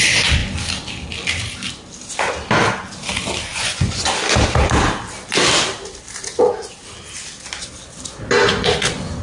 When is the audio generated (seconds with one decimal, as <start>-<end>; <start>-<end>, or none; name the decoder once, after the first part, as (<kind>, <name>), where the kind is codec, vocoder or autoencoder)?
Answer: 3.5-4.1 (vocoder, Vocos)